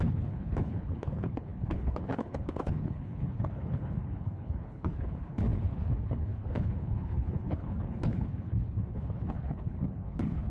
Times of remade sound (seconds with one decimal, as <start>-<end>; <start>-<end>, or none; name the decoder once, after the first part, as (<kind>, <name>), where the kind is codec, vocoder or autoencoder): 0.0-10.5 (codec, HILCodec)